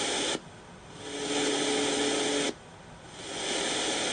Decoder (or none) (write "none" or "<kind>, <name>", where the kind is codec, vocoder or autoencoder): none